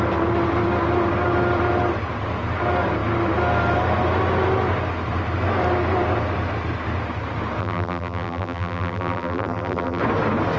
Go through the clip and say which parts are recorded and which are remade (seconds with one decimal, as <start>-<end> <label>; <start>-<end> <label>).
0.0-7.6 recorded; 7.6-10.0 remade; 10.0-10.6 recorded